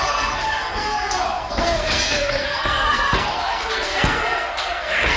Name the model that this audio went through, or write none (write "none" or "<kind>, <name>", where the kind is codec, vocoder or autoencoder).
codec, SNAC